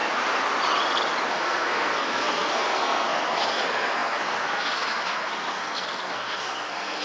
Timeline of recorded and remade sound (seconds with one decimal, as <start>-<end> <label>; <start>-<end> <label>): 0.0-1.3 recorded; 1.3-7.0 remade